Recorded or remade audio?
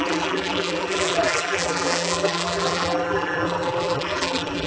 remade